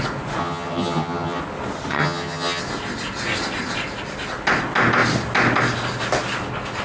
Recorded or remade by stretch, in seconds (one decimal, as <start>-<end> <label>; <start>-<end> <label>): 0.0-0.4 recorded; 0.4-1.4 remade; 1.4-1.9 recorded; 1.9-2.6 remade; 2.6-6.8 recorded